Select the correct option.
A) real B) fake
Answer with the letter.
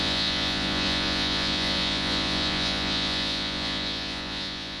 B